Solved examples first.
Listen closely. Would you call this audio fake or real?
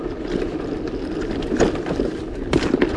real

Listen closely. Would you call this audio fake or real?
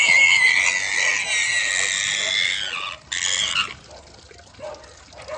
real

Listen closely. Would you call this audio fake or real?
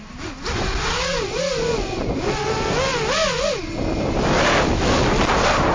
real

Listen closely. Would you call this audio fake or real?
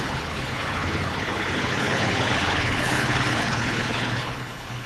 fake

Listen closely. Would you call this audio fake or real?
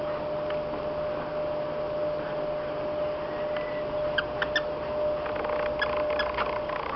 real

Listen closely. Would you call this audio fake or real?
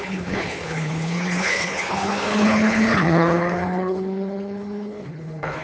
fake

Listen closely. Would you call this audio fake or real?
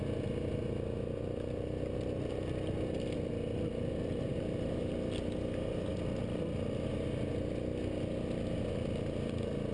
real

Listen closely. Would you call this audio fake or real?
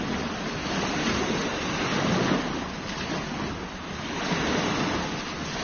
real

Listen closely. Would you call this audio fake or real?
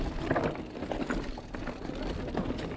real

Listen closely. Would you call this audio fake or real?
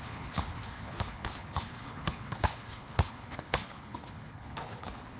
fake